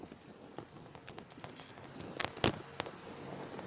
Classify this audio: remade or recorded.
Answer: recorded